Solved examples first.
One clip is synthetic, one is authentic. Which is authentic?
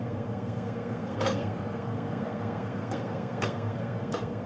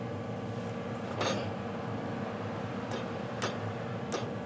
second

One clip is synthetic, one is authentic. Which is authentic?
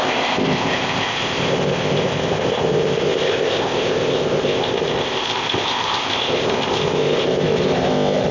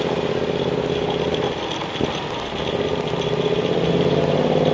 second